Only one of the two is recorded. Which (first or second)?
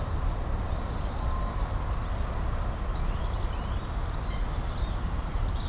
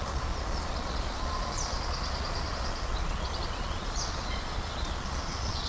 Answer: first